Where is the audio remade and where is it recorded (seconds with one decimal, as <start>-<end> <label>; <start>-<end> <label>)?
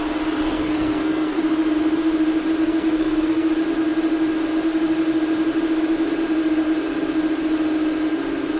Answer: 0.0-0.4 recorded; 0.4-1.4 remade; 1.4-2.6 recorded; 2.6-3.5 remade; 3.5-8.6 recorded